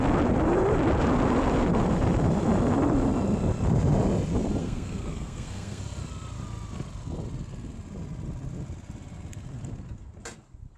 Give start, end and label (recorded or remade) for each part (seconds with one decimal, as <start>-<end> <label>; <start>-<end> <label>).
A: 0.0-4.6 recorded; 4.6-5.8 remade; 5.8-10.8 recorded

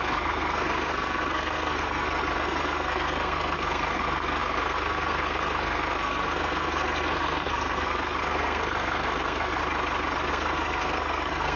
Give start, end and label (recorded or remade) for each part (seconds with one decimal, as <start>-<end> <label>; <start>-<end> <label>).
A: 0.0-9.6 remade; 9.6-10.3 recorded; 10.3-11.6 remade

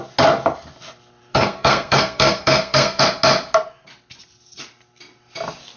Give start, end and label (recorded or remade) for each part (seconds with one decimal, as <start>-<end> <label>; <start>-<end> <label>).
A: 0.0-1.3 recorded; 1.3-3.0 remade; 3.0-5.8 recorded